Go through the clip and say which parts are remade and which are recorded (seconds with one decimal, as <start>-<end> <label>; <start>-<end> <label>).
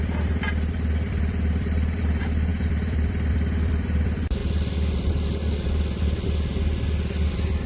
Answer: 0.0-4.4 remade; 4.4-7.3 recorded; 7.3-7.7 remade